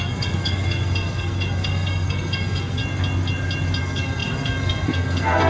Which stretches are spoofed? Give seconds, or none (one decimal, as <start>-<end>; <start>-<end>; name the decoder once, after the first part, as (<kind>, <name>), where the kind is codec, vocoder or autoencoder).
0.0-2.8 (codec, SNAC); 3.8-5.5